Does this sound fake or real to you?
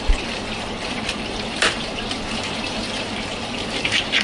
fake